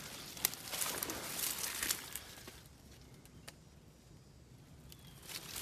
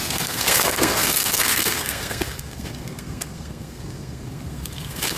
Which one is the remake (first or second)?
second